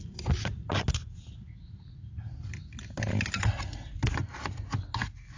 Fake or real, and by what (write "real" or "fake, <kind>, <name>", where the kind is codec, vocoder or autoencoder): real